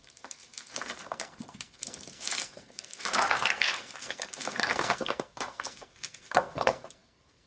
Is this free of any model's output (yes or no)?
no